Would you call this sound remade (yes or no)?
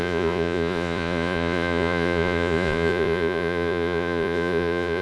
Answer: yes